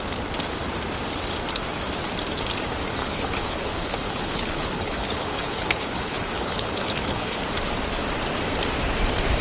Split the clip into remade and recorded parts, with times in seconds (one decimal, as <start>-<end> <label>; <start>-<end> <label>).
0.0-3.0 recorded; 3.0-7.4 remade; 7.4-9.4 recorded